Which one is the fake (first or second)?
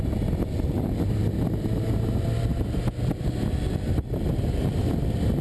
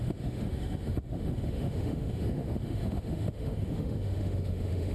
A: second